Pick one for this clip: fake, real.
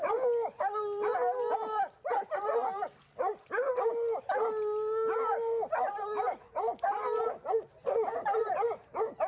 real